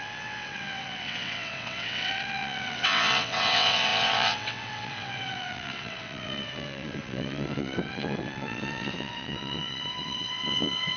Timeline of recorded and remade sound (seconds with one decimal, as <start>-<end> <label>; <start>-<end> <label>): 0.0-11.0 remade